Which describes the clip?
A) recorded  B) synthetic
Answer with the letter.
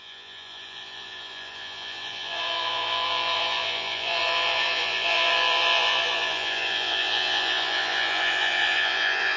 B